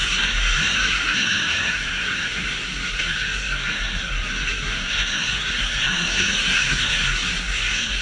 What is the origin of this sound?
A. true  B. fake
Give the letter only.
B